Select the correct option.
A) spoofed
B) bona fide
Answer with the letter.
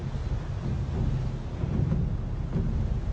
B